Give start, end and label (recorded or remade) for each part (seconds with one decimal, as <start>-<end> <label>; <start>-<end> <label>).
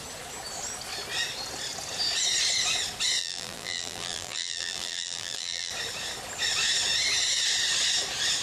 0.0-3.2 recorded; 3.2-5.7 remade; 5.7-8.4 recorded